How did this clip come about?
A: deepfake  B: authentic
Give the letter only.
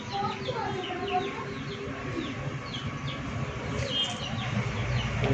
B